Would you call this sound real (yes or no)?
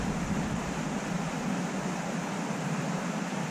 no